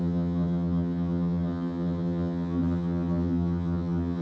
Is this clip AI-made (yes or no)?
yes